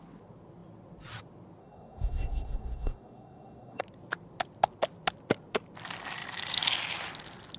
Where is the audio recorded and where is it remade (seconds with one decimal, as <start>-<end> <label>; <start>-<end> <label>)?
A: 0.0-1.6 recorded; 1.6-3.8 remade; 3.8-7.6 recorded